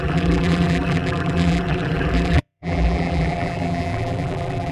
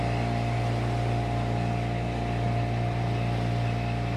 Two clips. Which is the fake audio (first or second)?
first